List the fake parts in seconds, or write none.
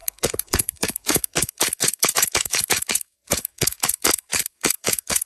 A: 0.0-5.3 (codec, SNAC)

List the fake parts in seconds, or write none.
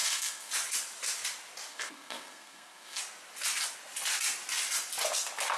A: 0.0-0.5 (codec, SNAC); 1.7-3.0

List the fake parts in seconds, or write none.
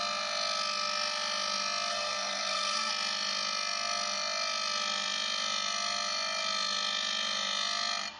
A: 1.9-2.9 (codec, SNAC)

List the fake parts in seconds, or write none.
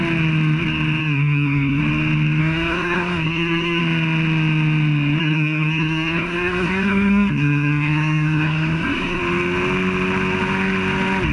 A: 1.0-1.8 (codec, SNAC); 2.4-3.8; 5.2-9.2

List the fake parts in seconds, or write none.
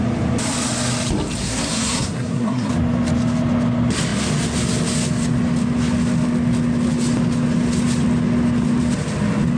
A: 1.4-2.7 (codec, SNAC)